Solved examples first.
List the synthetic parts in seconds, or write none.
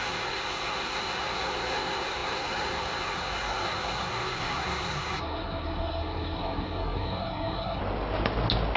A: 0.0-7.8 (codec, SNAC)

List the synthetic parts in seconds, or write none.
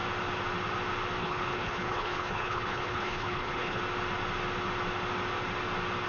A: 1.2-3.8 (codec, HILCodec)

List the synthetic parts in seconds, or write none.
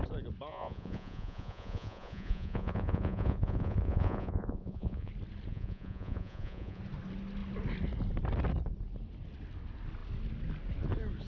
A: 0.5-5.1 (vocoder, Vocos); 5.5-6.8